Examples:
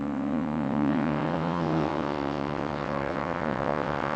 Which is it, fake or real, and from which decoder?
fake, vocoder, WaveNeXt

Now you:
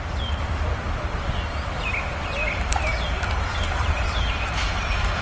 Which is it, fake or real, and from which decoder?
fake, vocoder, BigVGAN v2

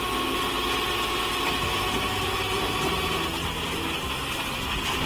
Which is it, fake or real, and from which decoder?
real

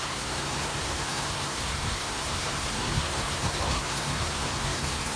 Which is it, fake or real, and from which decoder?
fake, codec, SNAC